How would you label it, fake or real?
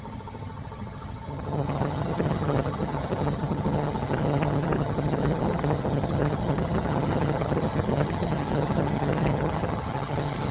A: fake